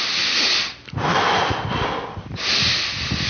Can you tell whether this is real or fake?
real